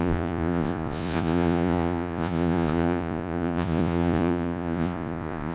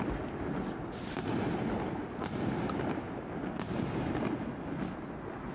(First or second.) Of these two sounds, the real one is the second